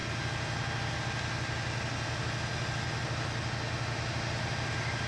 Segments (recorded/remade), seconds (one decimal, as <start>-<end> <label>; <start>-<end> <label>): 0.0-5.1 recorded